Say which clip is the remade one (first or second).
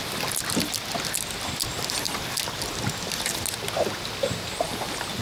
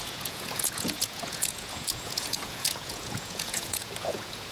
second